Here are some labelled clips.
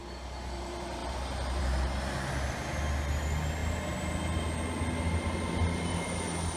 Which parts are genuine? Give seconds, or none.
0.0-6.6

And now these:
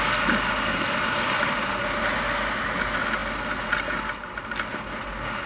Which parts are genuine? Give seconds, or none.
0.0-5.5

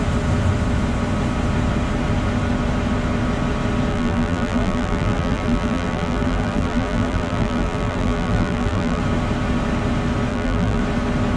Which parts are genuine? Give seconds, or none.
0.0-3.9; 9.0-10.3; 10.8-11.4

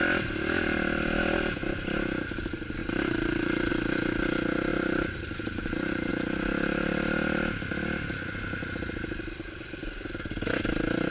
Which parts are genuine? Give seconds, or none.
0.0-2.8; 3.7-4.7; 6.1-11.1

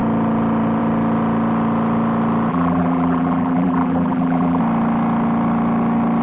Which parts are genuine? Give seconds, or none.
0.0-2.5; 4.6-6.2